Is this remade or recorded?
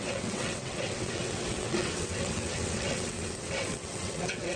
remade